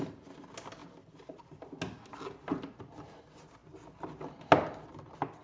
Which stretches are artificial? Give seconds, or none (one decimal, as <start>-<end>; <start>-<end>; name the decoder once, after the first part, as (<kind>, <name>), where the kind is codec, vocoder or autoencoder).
none